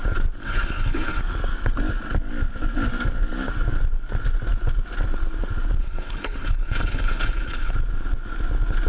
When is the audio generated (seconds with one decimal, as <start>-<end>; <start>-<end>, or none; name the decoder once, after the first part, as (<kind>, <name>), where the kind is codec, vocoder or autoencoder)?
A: 0.4-1.2 (codec, HILCodec); 5.8-7.7